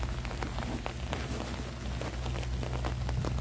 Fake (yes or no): no